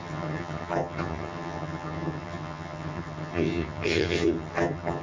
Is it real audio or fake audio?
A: fake